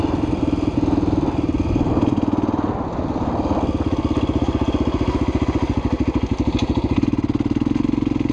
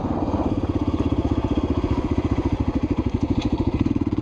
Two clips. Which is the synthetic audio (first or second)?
second